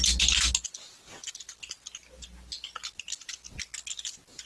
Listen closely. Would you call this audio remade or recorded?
recorded